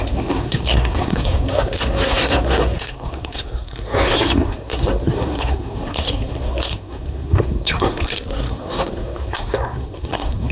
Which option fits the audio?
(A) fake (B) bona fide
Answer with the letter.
A